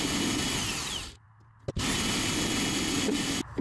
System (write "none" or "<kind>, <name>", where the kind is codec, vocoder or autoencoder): none